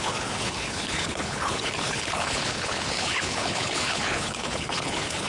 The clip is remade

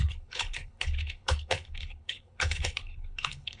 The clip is remade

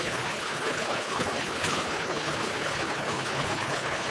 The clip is remade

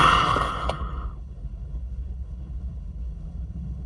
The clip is remade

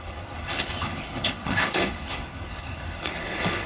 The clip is remade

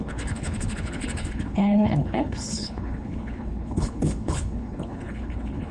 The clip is remade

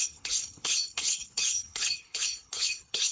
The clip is remade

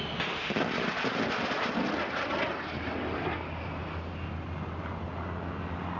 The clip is recorded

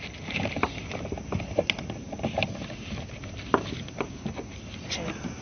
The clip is recorded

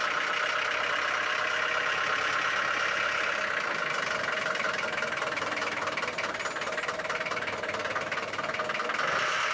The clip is recorded